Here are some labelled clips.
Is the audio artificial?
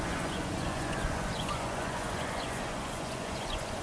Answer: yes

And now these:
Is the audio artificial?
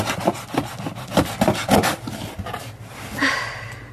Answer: no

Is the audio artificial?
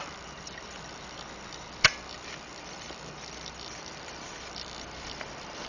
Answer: yes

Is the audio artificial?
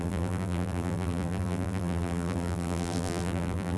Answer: yes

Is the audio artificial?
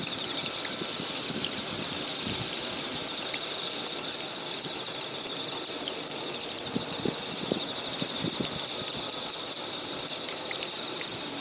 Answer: no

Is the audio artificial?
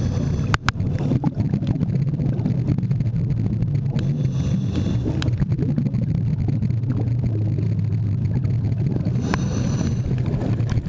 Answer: no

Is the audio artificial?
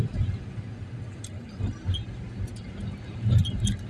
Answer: no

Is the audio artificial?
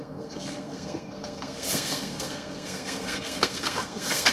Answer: yes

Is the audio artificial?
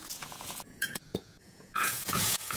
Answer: yes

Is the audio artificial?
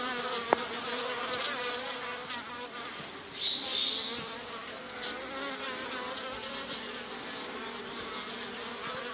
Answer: no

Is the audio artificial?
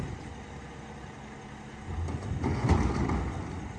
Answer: no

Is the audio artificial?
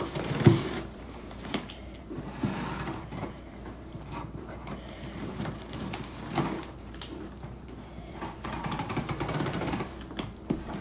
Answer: yes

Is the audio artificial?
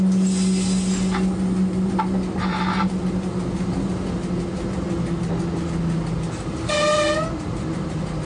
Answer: no